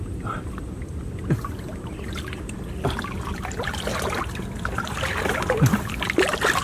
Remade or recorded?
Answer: recorded